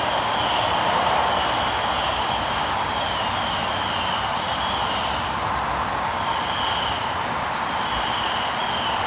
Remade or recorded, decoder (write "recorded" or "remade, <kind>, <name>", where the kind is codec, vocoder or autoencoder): recorded